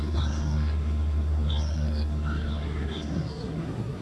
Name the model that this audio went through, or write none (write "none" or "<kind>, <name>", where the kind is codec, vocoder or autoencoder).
codec, SNAC